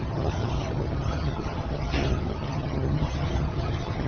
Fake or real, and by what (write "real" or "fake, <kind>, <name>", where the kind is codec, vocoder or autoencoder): fake, vocoder, HiFi-GAN